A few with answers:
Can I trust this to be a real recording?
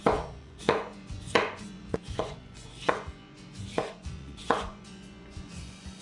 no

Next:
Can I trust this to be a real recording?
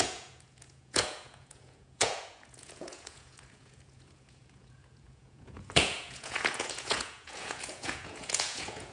no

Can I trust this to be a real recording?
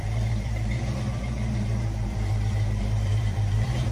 no